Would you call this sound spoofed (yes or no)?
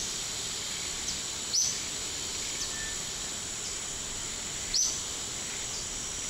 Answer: no